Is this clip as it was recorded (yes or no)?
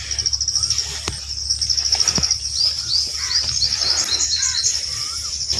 yes